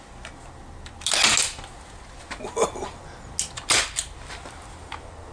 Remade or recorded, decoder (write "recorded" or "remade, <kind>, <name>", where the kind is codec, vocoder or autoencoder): recorded